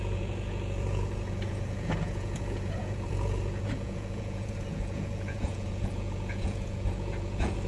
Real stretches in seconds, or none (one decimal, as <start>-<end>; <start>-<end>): none